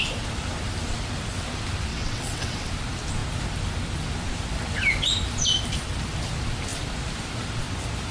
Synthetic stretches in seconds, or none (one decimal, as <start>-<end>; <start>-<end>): 1.9-2.7

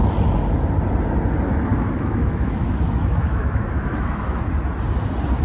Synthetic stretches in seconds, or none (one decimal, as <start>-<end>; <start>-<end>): 1.7-4.4

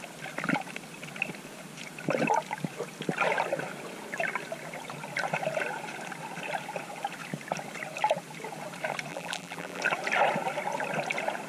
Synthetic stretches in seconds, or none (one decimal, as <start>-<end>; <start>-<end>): 9.1-9.8